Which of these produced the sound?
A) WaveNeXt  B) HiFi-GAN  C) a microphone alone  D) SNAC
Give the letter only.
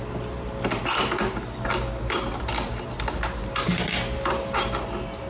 C